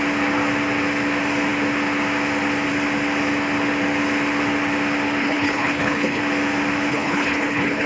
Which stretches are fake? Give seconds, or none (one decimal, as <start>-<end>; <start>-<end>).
5.2-6.2; 6.9-7.9